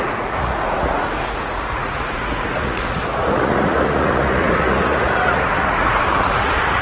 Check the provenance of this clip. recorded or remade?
remade